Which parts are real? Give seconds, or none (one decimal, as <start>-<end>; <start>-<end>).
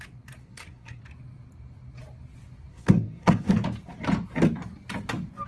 0.0-0.4; 1.0-2.7; 3.5-5.5